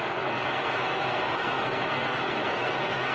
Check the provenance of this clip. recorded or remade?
remade